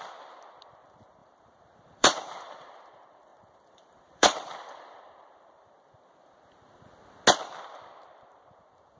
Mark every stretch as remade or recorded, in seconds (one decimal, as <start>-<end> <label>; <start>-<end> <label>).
0.0-1.2 recorded; 1.2-2.9 remade; 2.9-3.3 recorded; 3.3-5.7 remade; 5.7-9.0 recorded